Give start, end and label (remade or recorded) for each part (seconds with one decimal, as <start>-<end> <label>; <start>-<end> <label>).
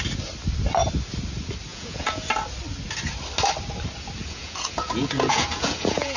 0.0-1.7 recorded; 1.7-2.3 remade; 2.3-4.2 recorded; 4.2-6.2 remade